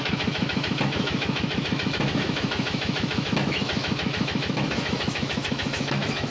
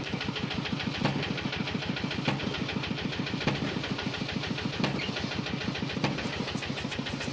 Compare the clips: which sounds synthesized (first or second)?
first